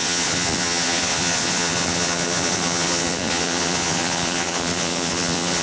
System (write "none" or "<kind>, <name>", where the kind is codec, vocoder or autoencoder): vocoder, Vocos